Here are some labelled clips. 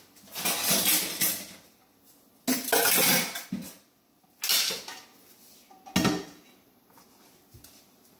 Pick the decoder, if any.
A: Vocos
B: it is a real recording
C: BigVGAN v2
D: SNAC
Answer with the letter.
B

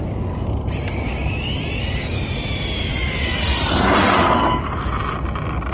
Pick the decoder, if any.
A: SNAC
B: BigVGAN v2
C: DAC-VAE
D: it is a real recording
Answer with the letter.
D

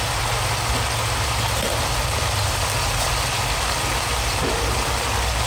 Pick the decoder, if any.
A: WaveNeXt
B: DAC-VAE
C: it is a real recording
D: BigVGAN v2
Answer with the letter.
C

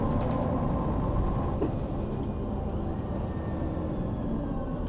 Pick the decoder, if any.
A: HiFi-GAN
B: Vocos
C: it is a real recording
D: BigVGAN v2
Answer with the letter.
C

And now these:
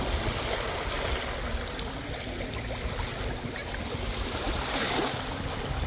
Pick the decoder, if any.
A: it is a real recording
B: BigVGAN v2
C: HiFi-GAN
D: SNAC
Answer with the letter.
B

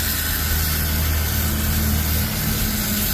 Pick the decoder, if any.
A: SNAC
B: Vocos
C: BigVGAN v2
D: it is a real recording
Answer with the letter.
D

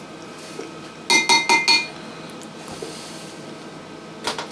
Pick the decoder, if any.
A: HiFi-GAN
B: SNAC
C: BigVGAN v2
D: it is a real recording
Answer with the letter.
D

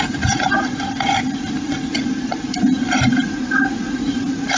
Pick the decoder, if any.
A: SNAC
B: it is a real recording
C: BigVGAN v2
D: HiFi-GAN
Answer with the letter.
C